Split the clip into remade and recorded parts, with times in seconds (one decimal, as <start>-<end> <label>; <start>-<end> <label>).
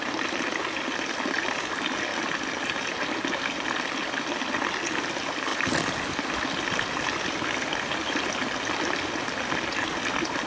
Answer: 0.0-10.5 recorded